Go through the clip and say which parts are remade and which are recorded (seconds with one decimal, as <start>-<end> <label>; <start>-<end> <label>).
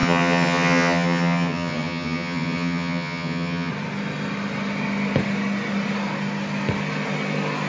0.0-3.7 remade; 3.7-7.7 recorded